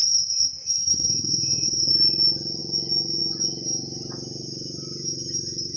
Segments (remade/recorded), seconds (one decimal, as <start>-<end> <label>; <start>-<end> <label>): 0.0-1.9 remade; 1.9-5.8 recorded